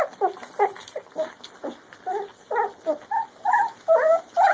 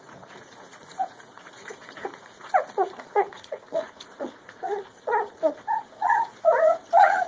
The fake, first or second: second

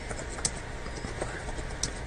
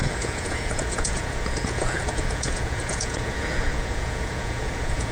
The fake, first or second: second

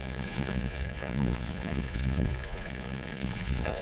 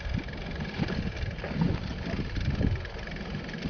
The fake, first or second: first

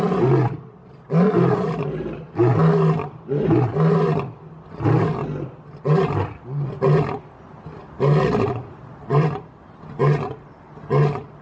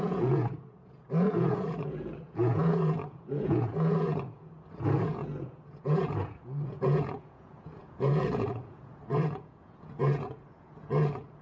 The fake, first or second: second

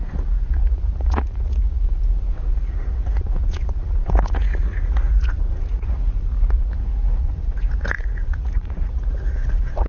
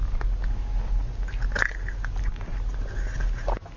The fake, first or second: first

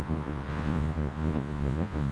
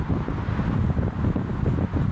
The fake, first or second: first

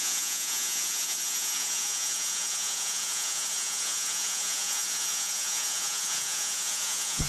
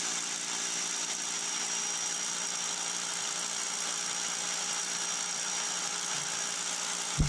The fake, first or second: first